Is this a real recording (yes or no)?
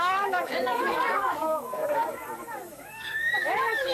no